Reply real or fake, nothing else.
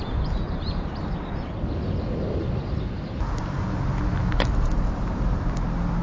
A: real